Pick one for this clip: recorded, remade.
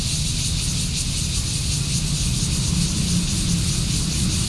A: recorded